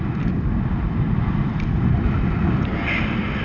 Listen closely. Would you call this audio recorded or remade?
recorded